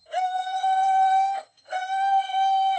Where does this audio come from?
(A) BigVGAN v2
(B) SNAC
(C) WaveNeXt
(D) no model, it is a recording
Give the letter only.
B